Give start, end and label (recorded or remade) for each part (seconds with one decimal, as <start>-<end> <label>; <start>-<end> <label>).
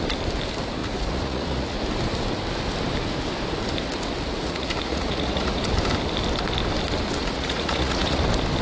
0.0-0.8 recorded; 0.8-1.8 remade; 1.8-4.3 recorded; 4.3-5.6 remade; 5.6-7.2 recorded; 7.2-8.2 remade; 8.2-8.6 recorded